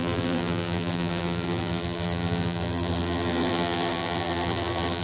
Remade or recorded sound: remade